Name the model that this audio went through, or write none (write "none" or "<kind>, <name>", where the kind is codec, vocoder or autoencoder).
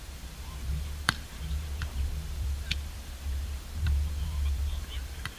vocoder, BigVGAN v2